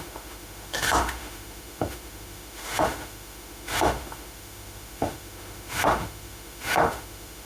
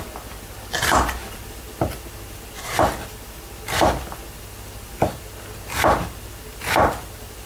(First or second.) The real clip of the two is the second